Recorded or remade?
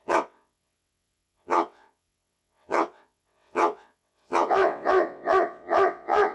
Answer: remade